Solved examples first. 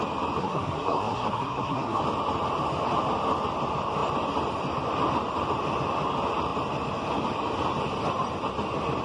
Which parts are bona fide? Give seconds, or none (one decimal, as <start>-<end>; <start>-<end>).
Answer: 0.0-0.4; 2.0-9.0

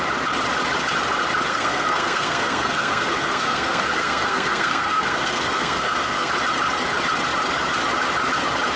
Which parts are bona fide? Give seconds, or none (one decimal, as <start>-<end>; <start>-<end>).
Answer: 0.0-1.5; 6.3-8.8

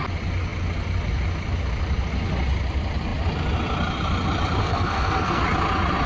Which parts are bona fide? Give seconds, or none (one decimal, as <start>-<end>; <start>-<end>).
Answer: 0.0-4.6; 5.4-6.1

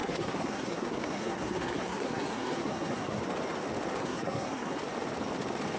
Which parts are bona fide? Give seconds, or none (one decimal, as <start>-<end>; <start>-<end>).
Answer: 3.2-4.0; 4.8-5.8

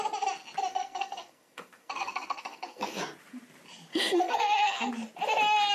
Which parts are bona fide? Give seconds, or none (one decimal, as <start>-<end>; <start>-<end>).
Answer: 0.0-0.7; 3.0-3.9; 4.9-5.7

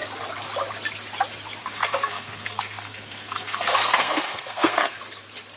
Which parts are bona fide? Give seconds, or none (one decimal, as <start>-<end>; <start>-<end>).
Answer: 0.0-1.6; 5.0-5.6

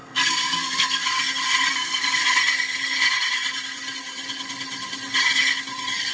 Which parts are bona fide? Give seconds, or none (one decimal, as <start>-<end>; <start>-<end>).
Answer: 1.0-1.7; 2.2-6.1

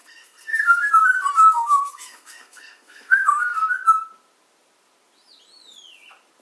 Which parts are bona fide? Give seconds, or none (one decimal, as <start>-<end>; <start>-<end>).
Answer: 0.9-1.3; 3.6-6.4